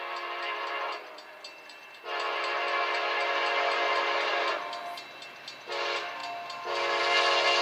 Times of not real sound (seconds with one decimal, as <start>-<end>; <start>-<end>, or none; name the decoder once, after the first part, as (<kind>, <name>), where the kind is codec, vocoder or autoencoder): none